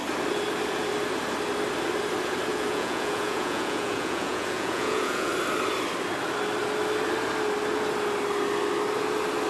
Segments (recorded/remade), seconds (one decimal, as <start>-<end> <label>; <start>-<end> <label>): 0.0-2.5 recorded; 2.5-5.3 remade; 5.3-9.5 recorded